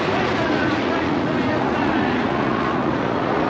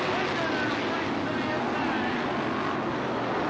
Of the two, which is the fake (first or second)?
first